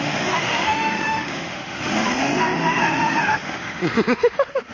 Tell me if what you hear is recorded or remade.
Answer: remade